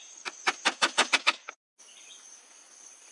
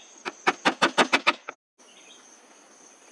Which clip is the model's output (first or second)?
first